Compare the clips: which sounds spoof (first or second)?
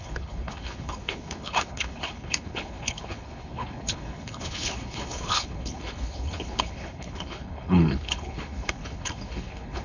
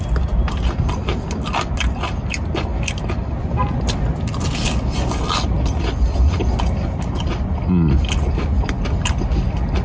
first